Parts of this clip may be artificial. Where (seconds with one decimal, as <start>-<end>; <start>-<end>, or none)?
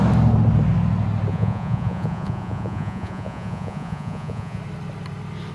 1.3-4.6